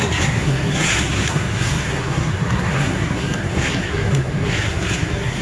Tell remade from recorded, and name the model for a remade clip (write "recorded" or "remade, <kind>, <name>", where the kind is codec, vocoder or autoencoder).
remade, codec, SNAC